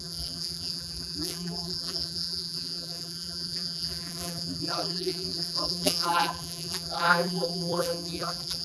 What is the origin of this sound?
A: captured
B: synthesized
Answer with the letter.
B